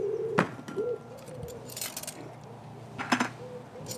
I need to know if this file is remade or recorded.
recorded